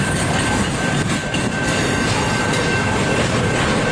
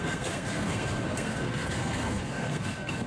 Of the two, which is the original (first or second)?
first